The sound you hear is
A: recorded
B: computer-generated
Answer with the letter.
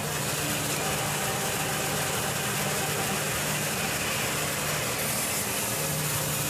A